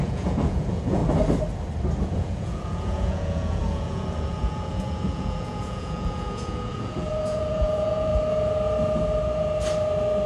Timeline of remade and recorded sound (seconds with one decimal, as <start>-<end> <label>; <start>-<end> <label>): 0.0-1.0 remade; 1.0-2.0 recorded; 2.0-8.1 remade; 8.1-10.3 recorded